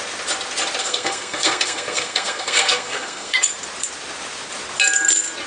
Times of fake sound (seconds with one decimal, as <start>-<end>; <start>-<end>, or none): 0.8-3.5